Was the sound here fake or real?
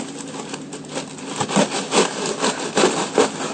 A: real